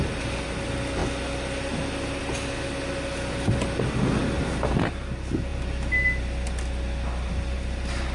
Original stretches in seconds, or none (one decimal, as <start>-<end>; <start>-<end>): 0.0-8.1